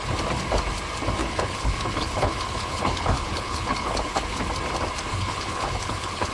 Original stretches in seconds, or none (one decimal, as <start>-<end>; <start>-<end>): 0.0-1.2; 4.4-5.1